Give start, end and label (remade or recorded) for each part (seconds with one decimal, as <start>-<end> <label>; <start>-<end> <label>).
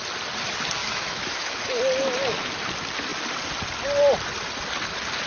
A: 0.0-0.8 recorded; 0.8-1.8 remade; 1.8-5.3 recorded